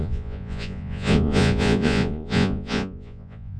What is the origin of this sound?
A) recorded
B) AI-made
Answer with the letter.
B